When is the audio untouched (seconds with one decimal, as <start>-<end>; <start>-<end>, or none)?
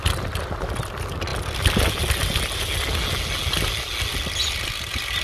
0.0-5.2